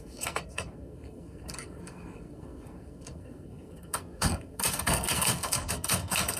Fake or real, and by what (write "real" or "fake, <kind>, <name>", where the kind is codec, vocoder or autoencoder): fake, codec, SNAC